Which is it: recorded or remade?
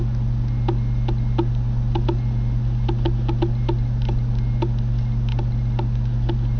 recorded